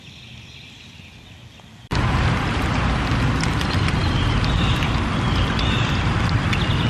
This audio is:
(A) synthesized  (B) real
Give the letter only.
B